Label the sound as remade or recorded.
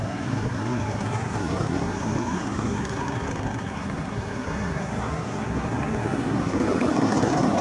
remade